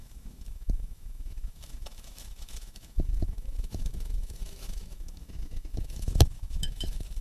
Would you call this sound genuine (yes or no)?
no